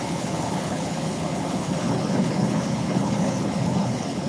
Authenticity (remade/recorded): remade